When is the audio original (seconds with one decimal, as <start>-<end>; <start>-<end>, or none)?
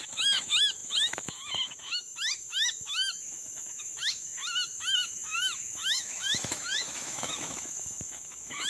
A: none